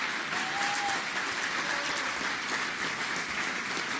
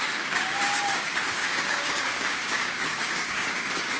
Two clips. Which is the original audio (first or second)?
first